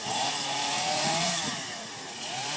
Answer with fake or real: fake